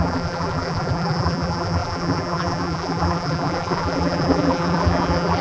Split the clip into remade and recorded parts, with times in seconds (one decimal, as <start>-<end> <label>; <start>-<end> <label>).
0.0-5.4 remade